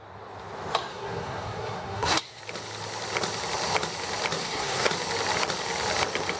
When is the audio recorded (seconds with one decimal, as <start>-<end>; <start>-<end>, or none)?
0.0-0.9; 2.4-4.4; 4.9-6.4